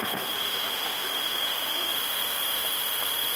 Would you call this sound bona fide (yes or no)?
no